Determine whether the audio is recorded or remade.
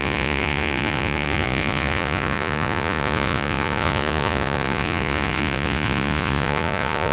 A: remade